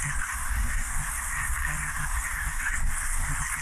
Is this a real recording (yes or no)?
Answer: no